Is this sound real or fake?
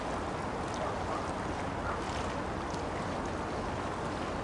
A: real